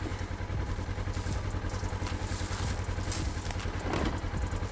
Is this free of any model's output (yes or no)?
yes